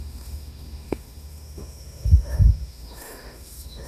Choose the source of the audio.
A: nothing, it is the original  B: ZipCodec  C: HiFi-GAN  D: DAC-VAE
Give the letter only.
D